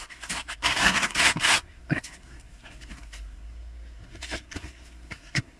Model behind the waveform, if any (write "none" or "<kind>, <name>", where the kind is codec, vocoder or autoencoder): codec, SNAC